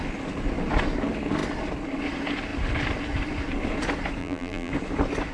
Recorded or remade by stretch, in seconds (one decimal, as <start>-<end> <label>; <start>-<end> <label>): 0.0-4.2 recorded; 4.2-4.7 remade; 4.7-5.3 recorded